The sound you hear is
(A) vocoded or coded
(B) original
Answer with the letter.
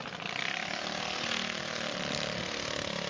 B